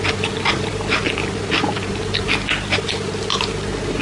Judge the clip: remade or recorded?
recorded